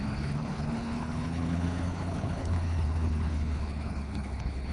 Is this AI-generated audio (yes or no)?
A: yes